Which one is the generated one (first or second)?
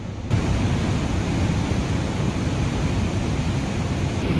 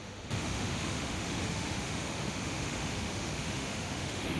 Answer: second